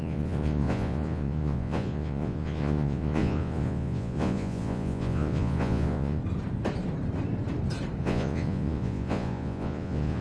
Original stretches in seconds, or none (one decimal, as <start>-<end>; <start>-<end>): 6.2-8.0